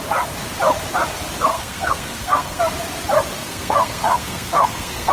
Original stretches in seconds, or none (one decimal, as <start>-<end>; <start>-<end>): 0.0-1.5; 2.6-3.4